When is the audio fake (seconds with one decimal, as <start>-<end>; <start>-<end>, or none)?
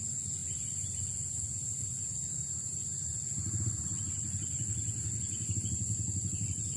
none